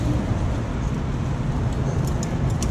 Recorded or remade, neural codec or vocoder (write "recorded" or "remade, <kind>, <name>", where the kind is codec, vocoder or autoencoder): recorded